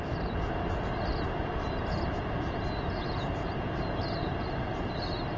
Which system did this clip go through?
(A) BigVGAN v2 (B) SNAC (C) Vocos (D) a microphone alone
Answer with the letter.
D